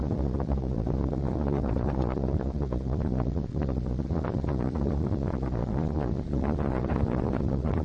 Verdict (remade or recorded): remade